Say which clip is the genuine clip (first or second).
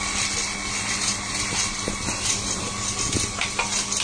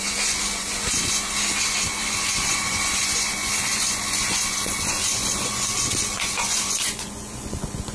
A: first